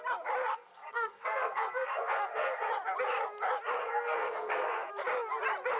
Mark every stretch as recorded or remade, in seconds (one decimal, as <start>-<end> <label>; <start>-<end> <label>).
0.0-0.5 recorded; 0.5-2.7 remade; 2.7-3.8 recorded; 3.8-4.9 remade; 4.9-5.8 recorded